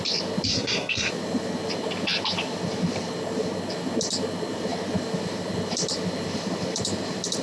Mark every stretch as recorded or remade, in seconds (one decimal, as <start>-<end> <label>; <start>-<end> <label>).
0.0-0.5 recorded; 0.5-1.1 remade; 1.1-7.4 recorded